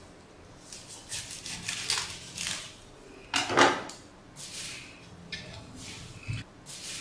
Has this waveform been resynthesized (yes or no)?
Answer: no